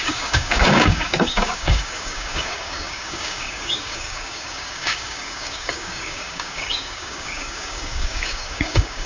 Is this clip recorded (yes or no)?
no